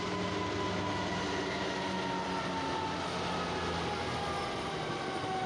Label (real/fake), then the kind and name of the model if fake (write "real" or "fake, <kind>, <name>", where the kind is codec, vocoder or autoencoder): real